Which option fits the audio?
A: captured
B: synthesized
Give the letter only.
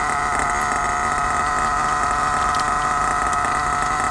A